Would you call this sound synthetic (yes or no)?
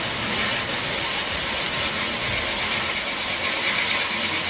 no